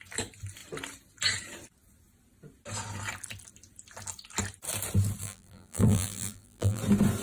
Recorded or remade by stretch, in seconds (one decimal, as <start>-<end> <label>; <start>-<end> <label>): 0.0-5.2 recorded; 5.2-6.8 remade; 6.8-7.2 recorded